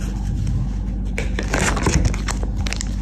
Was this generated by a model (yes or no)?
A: no